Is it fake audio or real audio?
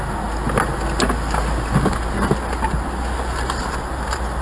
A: real